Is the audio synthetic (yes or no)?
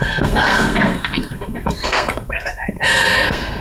yes